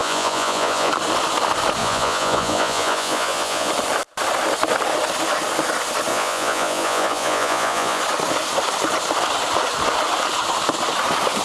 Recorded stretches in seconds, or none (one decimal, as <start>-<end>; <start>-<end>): 0.9-1.8; 3.7-6.1; 8.0-11.4